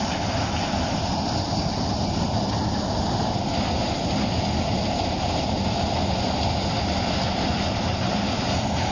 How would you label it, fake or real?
real